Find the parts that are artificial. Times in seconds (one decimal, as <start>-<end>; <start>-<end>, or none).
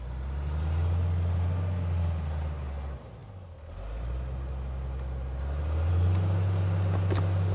none